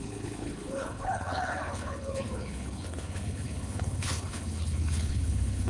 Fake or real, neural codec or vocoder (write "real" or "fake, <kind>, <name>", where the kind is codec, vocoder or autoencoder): fake, codec, HILCodec